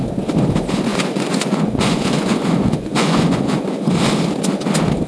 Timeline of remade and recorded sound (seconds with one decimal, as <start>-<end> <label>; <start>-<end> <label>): 0.0-0.9 recorded; 0.9-4.0 remade; 4.0-5.1 recorded